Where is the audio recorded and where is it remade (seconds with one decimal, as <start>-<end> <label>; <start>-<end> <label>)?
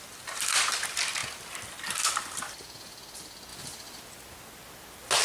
0.0-1.2 remade; 1.2-2.2 recorded; 2.2-3.5 remade; 3.5-5.2 recorded